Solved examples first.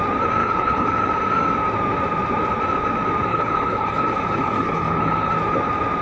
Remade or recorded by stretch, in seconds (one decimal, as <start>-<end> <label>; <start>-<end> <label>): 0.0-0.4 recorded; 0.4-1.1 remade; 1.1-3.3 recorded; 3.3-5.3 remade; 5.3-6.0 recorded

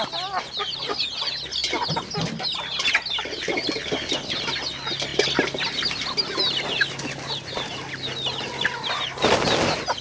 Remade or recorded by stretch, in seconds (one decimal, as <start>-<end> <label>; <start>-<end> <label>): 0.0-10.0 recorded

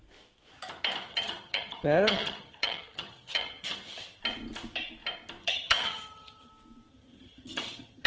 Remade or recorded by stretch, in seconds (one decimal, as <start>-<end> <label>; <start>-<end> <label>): 0.0-1.1 recorded; 1.1-4.2 remade; 4.2-5.4 recorded; 5.4-6.5 remade; 6.5-6.9 recorded; 6.9-8.1 remade